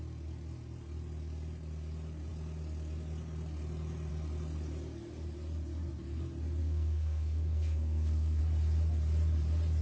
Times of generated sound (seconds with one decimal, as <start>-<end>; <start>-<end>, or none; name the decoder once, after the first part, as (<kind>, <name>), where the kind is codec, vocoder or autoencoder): 6.6-8.4 (codec, SNAC)